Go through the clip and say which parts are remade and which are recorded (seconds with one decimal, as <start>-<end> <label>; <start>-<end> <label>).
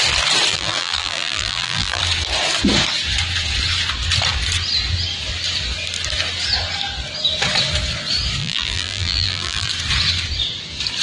0.0-0.5 recorded; 0.5-2.0 remade; 2.0-8.4 recorded; 8.4-9.7 remade; 9.7-11.0 recorded